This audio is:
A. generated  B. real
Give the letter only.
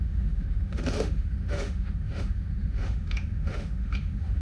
A